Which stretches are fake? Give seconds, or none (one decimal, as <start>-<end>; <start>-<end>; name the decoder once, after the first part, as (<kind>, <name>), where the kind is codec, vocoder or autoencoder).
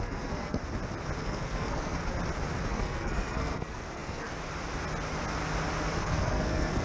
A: 0.0-0.6 (codec, SNAC); 1.2-2.0; 2.7-4.3; 6.0-6.8